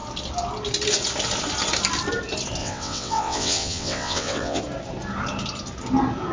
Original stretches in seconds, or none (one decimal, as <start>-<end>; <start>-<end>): 0.0-2.6; 4.6-6.3